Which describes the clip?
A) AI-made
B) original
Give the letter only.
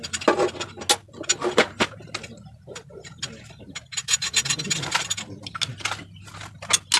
B